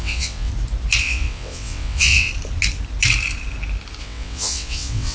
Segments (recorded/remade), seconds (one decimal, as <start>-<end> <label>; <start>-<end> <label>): 0.0-0.5 remade; 0.5-1.0 recorded; 1.0-2.3 remade; 2.3-4.0 recorded; 4.0-5.1 remade